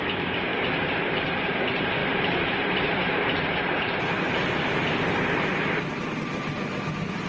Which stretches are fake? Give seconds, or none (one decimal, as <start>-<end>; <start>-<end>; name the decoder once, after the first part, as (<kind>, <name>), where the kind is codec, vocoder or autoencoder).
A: 0.5-1.3 (vocoder, BigVGAN v2); 2.0-5.5